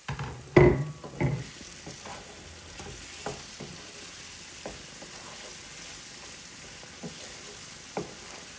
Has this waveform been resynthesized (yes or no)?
no